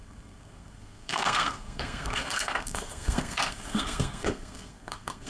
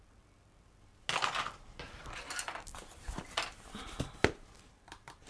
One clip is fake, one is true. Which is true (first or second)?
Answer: second